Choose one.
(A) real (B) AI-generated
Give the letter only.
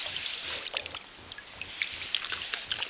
A